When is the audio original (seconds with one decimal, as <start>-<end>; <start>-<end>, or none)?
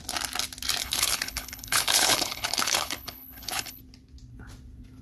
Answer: 0.0-0.8; 3.8-5.0